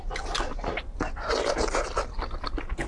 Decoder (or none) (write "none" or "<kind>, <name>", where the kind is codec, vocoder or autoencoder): none